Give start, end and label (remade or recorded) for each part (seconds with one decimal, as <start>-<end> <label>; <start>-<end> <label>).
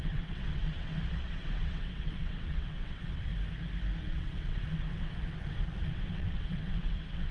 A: 0.0-3.3 remade; 3.3-4.0 recorded; 4.0-7.3 remade